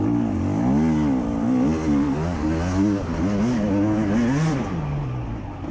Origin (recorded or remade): recorded